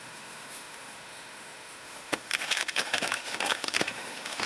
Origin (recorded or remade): remade